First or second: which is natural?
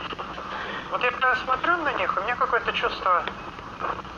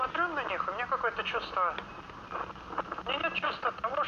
second